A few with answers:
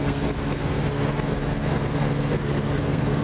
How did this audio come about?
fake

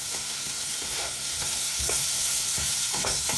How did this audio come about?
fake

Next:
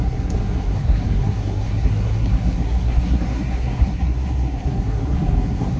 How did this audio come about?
fake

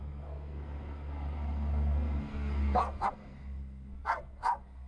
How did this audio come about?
fake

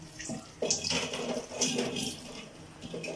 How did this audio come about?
real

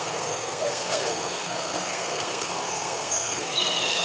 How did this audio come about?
fake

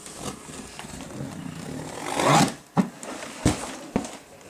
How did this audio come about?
real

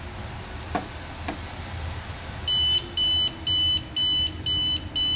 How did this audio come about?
real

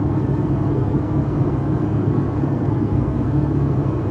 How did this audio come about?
fake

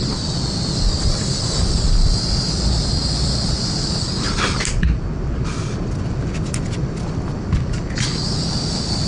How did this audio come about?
real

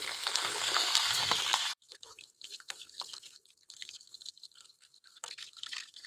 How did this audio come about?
fake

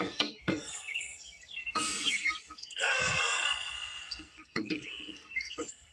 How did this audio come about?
fake